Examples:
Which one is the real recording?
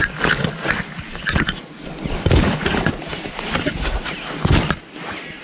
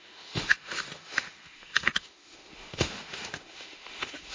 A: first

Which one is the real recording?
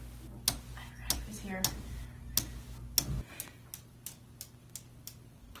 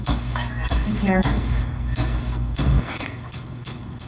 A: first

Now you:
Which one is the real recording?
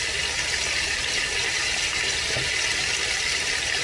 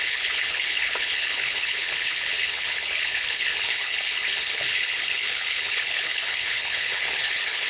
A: first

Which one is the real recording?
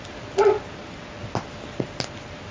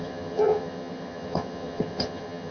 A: first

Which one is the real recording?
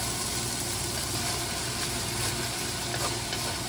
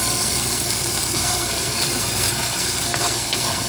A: first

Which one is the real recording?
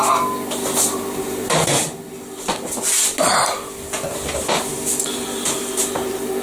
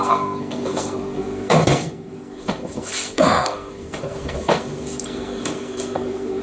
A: first